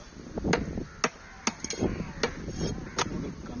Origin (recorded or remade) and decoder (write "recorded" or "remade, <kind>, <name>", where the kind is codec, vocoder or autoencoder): recorded